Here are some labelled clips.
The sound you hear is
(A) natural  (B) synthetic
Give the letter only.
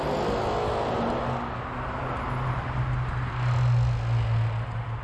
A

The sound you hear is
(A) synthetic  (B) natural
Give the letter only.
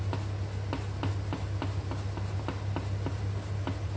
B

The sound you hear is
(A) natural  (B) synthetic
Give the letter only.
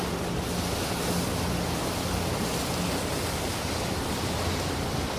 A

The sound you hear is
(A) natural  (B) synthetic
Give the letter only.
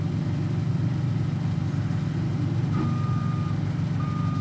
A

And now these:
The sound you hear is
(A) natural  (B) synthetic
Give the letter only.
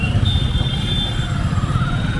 A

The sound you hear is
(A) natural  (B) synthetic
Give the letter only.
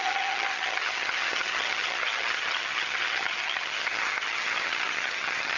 B